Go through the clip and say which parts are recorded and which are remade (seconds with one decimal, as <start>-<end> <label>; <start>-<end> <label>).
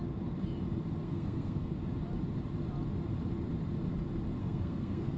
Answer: 0.0-1.0 recorded; 1.0-1.7 remade; 1.7-4.4 recorded; 4.4-5.2 remade